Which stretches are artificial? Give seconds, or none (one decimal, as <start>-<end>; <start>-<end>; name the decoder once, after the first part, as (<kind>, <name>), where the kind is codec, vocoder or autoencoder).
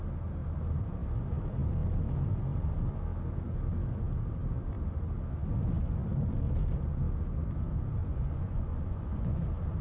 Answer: 8.0-9.4 (vocoder, Vocos)